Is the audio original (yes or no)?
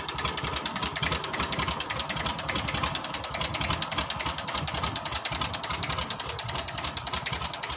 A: yes